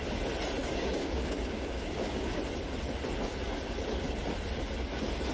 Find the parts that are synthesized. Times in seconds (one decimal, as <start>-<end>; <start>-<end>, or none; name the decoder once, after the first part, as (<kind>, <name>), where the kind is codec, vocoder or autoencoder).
0.6-2.4 (codec, DAC)